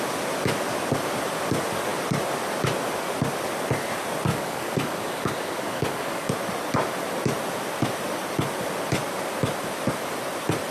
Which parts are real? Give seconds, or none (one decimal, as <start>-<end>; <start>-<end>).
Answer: 0.0-4.3; 6.3-10.7